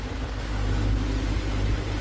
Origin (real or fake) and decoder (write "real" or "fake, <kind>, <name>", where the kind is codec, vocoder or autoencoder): real